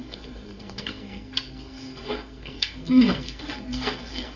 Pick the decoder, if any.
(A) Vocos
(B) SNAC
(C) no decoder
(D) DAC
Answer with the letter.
B